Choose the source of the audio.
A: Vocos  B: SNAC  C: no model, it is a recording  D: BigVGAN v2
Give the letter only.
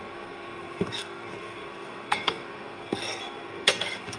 B